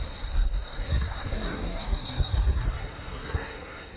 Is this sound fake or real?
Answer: fake